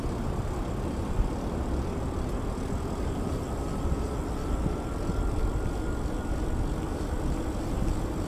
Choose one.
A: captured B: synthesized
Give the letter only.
A